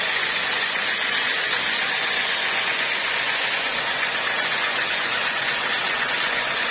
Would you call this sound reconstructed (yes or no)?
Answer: yes